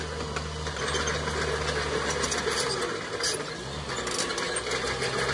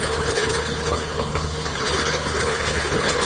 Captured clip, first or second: first